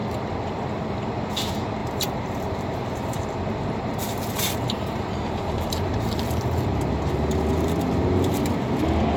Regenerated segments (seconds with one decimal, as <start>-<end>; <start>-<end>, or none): 1.8-6.3

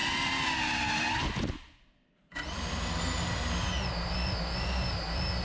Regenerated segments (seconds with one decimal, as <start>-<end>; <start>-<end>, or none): 0.0-3.0

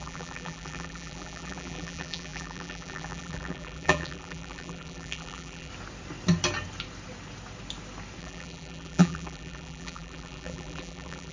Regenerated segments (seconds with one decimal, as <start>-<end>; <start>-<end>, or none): 0.0-5.7; 8.2-11.3

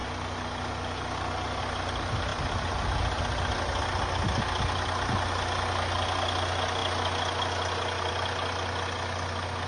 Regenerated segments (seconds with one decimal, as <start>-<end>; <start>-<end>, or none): none

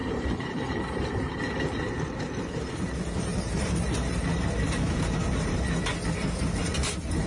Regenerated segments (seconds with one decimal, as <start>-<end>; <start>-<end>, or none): 0.0-1.1; 3.3-4.2